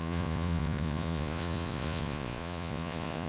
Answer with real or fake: fake